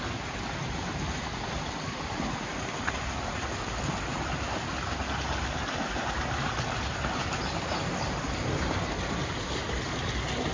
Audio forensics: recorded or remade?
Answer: recorded